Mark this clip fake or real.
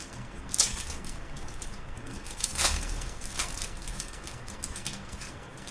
fake